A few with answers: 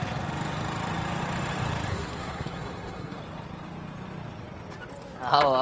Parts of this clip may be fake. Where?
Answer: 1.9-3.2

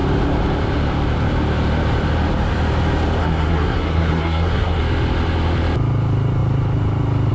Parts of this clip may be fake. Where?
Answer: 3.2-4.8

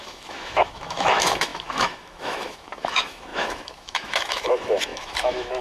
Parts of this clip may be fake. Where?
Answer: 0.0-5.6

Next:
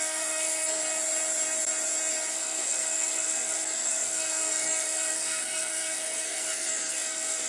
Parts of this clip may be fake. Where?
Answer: 0.0-0.8; 2.3-7.5

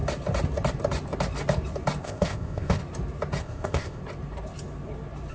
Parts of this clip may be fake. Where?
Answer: 2.0-2.8; 3.4-4.0

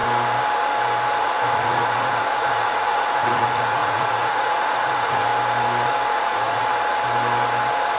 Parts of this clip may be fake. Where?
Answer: 1.2-5.3; 6.1-6.7